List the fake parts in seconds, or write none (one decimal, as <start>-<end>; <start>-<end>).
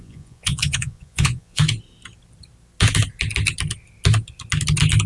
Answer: 0.0-1.6